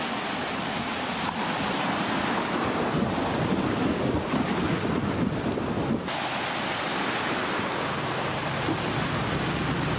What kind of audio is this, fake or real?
real